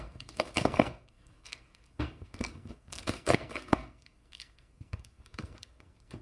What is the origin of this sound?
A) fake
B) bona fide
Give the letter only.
A